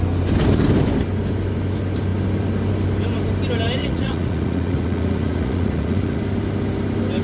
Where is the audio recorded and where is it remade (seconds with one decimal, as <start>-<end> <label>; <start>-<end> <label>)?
0.0-3.8 recorded; 3.8-6.2 remade; 6.2-7.2 recorded